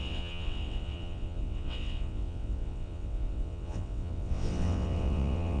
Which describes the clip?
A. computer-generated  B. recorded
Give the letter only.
A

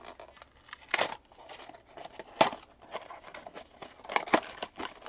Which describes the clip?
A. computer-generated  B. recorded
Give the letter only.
B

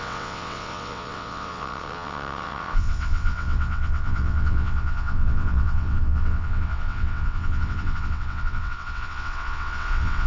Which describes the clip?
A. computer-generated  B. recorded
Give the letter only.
A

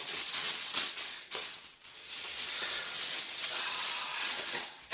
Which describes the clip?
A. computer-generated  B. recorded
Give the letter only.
A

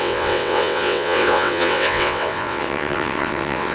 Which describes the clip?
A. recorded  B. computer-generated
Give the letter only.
B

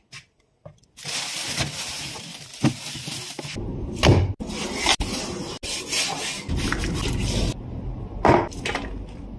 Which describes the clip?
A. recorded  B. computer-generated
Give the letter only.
A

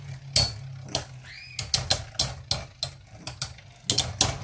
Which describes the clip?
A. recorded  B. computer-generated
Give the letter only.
A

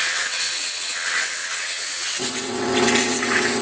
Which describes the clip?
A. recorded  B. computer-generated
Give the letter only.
B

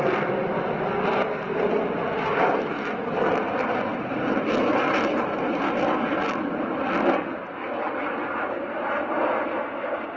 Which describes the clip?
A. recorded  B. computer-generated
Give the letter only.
A